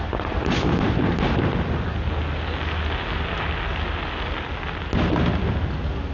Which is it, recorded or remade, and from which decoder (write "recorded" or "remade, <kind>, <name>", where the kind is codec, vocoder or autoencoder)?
recorded